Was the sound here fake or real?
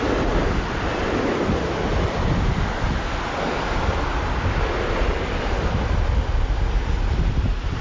real